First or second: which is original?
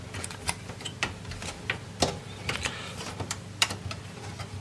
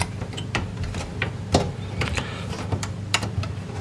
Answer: first